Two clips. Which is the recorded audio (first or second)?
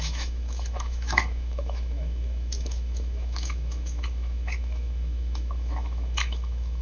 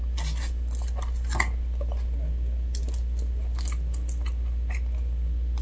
second